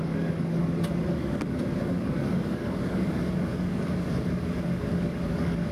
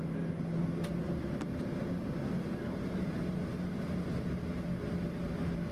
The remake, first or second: first